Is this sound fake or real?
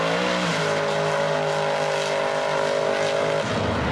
real